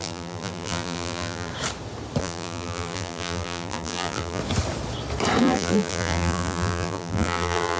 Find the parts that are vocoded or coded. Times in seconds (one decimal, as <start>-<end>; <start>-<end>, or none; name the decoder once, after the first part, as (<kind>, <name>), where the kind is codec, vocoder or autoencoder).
0.0-1.5 (vocoder, BigVGAN v2); 2.2-4.4; 5.4-7.8